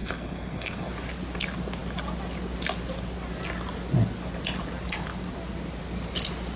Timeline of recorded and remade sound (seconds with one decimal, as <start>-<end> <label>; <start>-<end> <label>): 0.0-0.9 remade; 0.9-6.6 recorded